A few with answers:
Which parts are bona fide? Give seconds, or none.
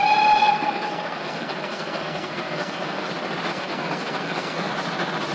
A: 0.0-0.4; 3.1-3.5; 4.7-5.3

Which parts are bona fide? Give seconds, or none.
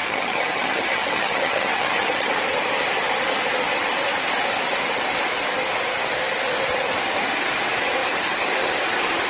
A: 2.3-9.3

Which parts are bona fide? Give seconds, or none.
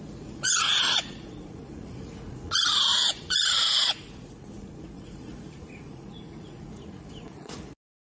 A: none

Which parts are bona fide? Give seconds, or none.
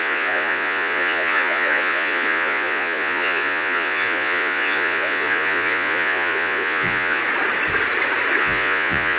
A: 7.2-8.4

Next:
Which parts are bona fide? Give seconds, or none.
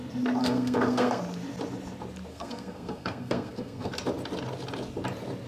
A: 0.0-0.4; 1.2-2.3; 3.9-5.5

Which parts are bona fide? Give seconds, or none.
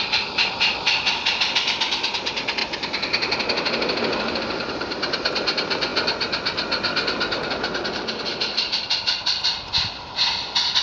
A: 0.0-10.8